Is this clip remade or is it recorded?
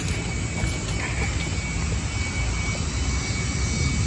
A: recorded